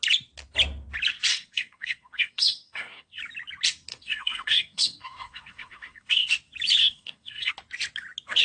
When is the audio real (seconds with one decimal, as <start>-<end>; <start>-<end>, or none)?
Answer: 0.0-1.3; 3.2-3.9; 6.3-6.8; 7.5-8.4